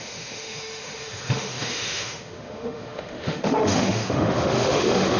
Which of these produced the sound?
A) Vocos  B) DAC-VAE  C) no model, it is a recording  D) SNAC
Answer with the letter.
B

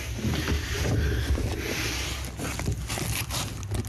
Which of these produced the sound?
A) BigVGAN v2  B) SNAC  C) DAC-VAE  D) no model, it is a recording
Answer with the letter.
D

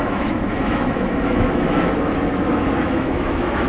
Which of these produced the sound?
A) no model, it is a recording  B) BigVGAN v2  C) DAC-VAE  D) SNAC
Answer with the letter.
C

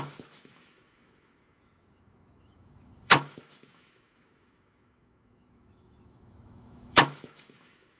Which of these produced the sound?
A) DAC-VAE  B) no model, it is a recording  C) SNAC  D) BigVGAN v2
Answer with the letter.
A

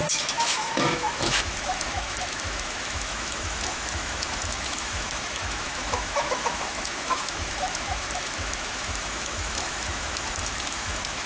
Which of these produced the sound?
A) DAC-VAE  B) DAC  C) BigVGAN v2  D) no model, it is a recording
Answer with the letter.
A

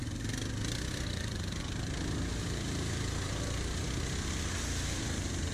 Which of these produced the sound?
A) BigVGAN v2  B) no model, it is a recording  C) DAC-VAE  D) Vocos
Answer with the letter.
B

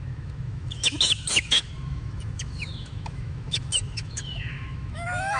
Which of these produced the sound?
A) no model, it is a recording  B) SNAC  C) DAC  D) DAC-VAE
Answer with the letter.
D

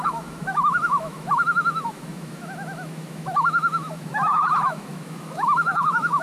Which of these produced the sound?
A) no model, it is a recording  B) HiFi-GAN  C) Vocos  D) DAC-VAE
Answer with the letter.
D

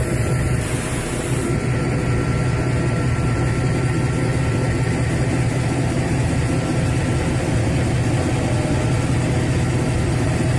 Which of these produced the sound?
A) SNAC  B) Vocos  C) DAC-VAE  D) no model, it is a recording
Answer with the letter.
D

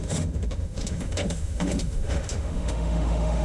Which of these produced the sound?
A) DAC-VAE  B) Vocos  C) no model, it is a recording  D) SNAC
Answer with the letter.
A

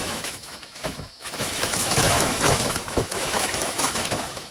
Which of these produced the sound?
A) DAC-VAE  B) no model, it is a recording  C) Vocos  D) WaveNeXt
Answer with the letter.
A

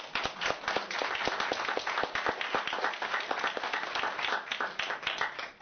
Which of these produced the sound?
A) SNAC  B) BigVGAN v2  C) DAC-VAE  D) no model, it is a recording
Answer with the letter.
D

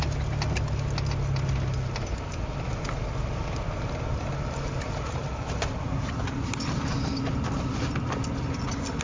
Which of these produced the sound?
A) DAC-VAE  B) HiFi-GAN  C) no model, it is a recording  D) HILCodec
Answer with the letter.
C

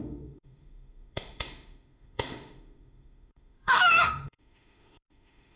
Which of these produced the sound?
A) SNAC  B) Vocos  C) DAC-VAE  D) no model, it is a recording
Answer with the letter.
C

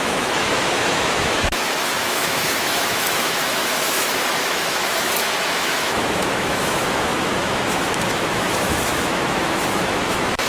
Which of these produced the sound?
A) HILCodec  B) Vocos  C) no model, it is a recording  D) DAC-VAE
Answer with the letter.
D